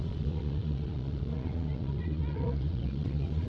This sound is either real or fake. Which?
fake